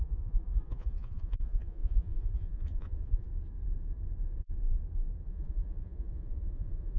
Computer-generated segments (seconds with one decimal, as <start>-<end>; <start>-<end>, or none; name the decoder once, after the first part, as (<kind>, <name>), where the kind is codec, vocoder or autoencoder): 0.0-3.3 (vocoder, Vocos); 5.3-7.0